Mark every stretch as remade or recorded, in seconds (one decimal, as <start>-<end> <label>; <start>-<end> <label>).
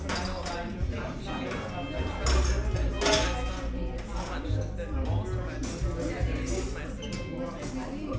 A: 0.0-8.2 recorded